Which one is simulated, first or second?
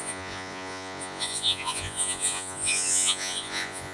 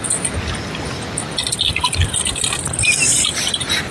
first